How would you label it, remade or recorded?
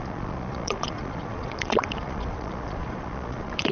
remade